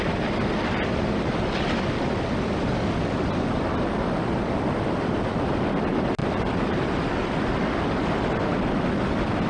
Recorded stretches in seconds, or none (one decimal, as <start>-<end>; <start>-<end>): 0.0-9.5